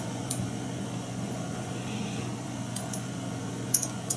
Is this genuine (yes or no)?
no